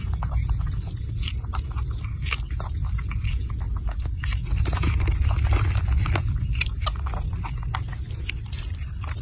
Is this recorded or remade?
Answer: recorded